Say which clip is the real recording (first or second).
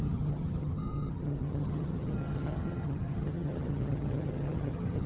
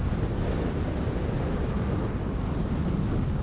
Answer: second